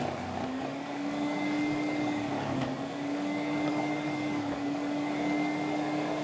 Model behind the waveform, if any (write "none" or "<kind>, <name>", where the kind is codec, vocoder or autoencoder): codec, DAC